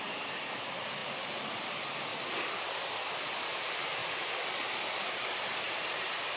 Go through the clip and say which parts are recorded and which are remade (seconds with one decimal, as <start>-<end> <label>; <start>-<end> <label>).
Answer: 0.0-1.0 remade; 1.0-1.5 recorded; 1.5-2.1 remade; 2.1-3.5 recorded; 3.5-4.0 remade; 4.0-5.1 recorded; 5.1-6.4 remade